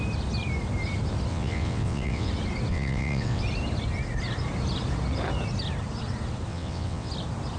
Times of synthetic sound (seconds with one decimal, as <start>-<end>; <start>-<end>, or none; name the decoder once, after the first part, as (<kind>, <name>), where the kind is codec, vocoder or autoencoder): 1.3-2.3 (vocoder, WaveNeXt); 2.7-3.4; 6.5-7.1